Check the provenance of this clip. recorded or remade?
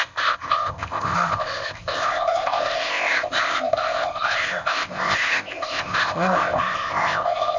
remade